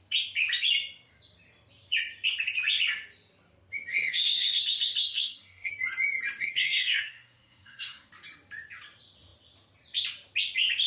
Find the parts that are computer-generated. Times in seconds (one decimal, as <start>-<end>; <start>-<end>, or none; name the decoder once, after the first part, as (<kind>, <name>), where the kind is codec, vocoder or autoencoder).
3.9-4.6 (codec, SNAC); 5.0-5.7; 6.4-8.1